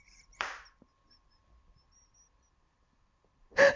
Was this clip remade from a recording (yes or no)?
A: yes